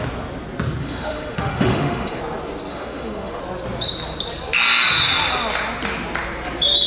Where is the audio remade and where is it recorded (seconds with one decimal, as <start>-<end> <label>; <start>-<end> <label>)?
0.0-0.8 recorded; 0.8-2.2 remade; 2.2-2.7 recorded; 2.7-3.4 remade; 3.4-6.9 recorded